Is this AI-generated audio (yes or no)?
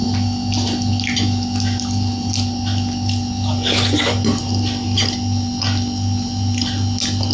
no